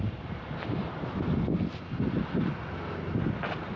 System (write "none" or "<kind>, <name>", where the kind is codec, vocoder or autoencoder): none